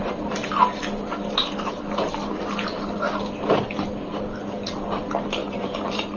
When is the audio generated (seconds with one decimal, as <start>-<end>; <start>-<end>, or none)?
0.0-0.8; 5.4-6.2